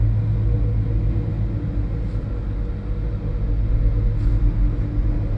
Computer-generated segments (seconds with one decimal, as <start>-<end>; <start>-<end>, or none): none